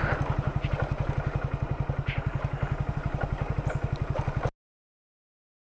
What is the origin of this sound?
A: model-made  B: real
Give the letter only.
B